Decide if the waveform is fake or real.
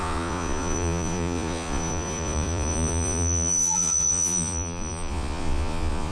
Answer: fake